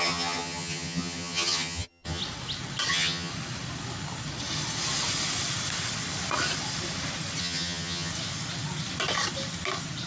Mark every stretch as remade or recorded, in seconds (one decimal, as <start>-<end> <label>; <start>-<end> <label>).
0.0-2.2 remade; 2.2-2.9 recorded; 2.9-3.3 remade; 3.3-7.4 recorded; 7.4-8.1 remade; 8.1-10.1 recorded